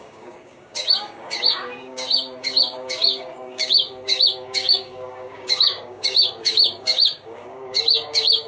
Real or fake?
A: fake